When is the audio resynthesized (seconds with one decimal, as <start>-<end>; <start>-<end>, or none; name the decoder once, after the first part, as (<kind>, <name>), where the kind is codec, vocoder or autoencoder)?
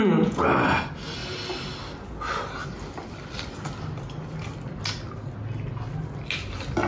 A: 0.0-0.5 (vocoder, Vocos)